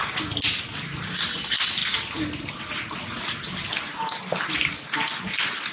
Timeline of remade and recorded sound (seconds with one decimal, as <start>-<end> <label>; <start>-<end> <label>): 0.0-5.7 recorded